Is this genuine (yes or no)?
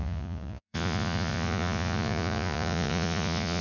no